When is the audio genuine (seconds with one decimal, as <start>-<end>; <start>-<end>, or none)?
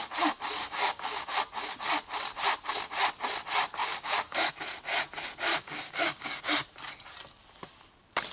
0.0-0.6; 1.4-3.8; 4.5-5.5; 6.4-8.3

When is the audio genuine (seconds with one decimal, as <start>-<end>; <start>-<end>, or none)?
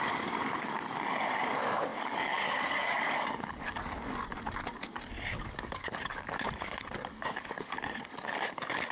none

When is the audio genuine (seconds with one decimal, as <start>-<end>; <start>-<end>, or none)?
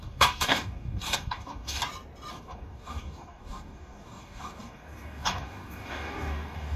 1.8-2.3